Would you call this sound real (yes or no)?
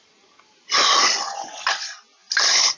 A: yes